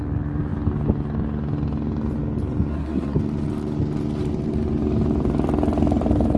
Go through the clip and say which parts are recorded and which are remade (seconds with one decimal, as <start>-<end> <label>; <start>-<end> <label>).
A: 0.0-2.7 recorded; 2.7-3.2 remade; 3.2-6.4 recorded